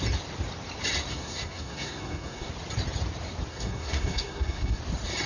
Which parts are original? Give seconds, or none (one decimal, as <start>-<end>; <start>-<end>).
0.0-1.1; 2.5-3.5; 4.8-5.3

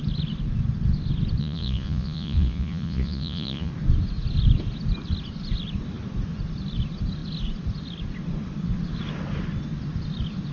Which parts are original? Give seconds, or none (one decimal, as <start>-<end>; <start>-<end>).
0.0-1.4; 3.7-10.5

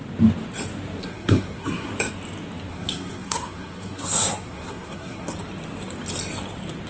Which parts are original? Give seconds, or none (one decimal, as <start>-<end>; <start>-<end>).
0.0-1.0; 1.9-2.7; 5.3-6.9

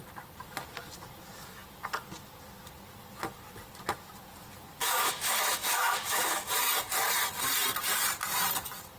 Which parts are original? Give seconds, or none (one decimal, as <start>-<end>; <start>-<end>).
0.0-4.8; 6.5-9.0

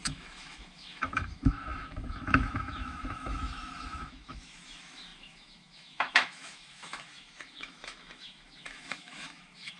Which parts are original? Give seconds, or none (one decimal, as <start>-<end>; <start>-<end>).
none

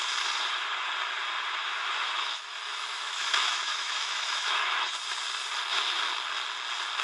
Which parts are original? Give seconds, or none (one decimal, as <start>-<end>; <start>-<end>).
0.0-1.6; 4.9-7.0